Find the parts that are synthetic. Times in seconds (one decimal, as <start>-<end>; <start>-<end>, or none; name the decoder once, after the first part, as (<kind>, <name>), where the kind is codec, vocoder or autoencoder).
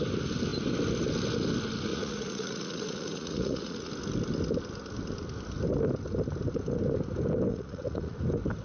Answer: 1.9-3.9 (vocoder, Vocos); 7.5-8.2